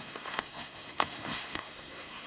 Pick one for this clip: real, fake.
fake